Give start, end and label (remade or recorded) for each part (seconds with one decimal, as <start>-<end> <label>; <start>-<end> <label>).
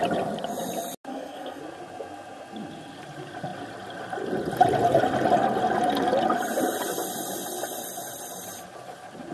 0.0-1.1 recorded; 1.1-1.6 remade; 1.6-9.3 recorded